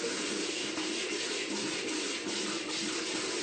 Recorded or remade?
recorded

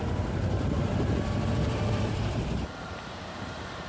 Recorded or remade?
remade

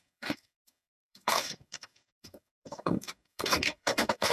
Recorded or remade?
remade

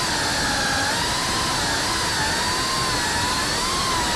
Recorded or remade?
recorded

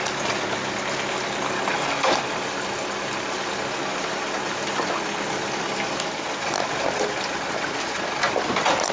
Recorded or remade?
recorded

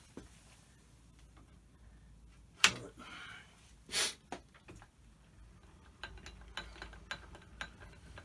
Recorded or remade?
recorded